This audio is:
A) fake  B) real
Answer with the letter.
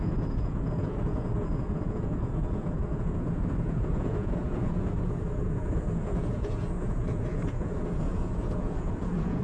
A